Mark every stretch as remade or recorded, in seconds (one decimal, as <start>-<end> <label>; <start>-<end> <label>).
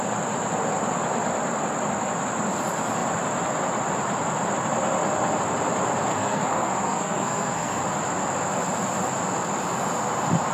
0.0-6.1 recorded; 6.1-7.8 remade; 7.8-10.5 recorded